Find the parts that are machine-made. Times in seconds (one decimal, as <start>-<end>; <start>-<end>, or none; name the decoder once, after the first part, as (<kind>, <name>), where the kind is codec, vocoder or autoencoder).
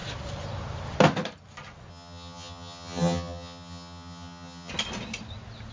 1.9-4.7 (vocoder, HiFi-GAN)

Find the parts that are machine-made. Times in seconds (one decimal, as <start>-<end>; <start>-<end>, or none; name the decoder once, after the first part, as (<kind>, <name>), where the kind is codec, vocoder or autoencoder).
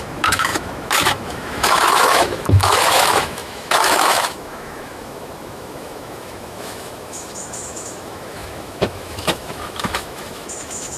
0.0-11.0 (autoencoder, DAC-VAE)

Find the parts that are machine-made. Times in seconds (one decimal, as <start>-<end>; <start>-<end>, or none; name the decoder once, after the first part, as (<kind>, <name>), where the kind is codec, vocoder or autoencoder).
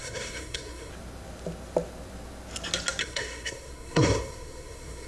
0.0-0.9 (codec, SNAC); 3.0-5.1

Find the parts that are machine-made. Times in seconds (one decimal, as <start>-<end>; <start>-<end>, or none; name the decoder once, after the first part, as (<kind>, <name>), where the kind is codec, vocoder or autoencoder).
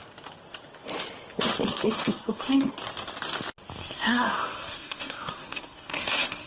1.7-2.7 (codec, SNAC); 3.8-6.5